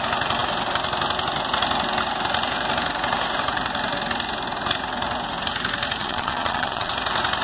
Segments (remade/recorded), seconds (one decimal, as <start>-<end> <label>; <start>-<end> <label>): 0.0-6.0 recorded; 6.0-6.9 remade; 6.9-7.4 recorded